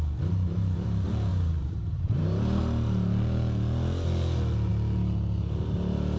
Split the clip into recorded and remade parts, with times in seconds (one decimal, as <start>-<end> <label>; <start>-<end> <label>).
0.0-1.3 recorded; 1.3-2.6 remade; 2.6-6.2 recorded

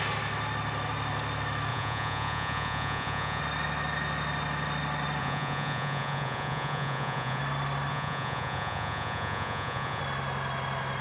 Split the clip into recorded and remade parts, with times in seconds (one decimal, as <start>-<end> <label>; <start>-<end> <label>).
0.0-1.7 recorded; 1.7-3.4 remade; 3.4-5.2 recorded; 5.2-7.4 remade; 7.4-7.9 recorded; 7.9-10.0 remade; 10.0-11.0 recorded